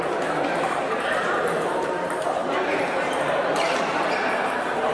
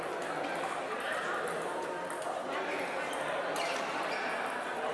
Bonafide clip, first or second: second